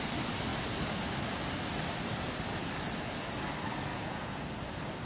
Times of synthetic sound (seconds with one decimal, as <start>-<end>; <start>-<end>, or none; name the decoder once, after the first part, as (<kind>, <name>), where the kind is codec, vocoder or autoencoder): 3.9-4.4 (vocoder, Vocos)